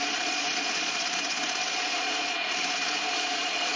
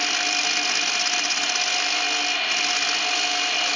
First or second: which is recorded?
second